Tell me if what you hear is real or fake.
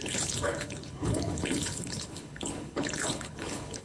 fake